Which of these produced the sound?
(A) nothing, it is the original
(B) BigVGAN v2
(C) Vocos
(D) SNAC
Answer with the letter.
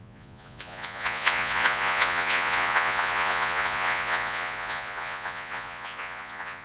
C